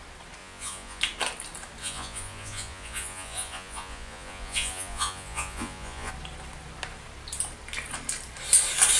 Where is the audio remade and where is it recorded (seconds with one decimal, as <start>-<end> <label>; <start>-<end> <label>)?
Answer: 0.0-0.4 recorded; 0.4-1.0 remade; 1.0-1.8 recorded; 1.8-6.1 remade; 6.1-9.0 recorded